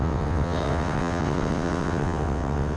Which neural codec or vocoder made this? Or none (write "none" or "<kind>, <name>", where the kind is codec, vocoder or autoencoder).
vocoder, WaveNeXt